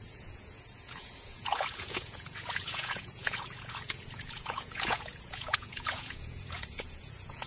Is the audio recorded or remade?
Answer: remade